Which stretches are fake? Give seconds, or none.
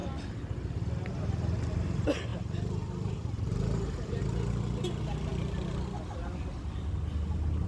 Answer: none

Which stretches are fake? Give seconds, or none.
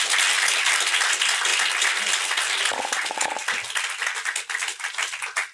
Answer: none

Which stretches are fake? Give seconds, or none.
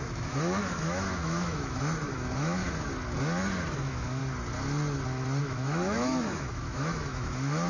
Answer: 0.0-2.6 (autoencoder, DAC-VAE); 3.8-4.2; 5.4-7.7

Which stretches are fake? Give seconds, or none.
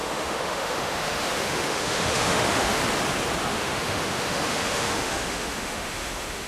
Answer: 0.0-2.8 (autoencoder, DAC-VAE); 3.4-6.5